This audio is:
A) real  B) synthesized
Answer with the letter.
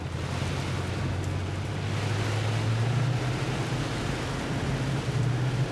A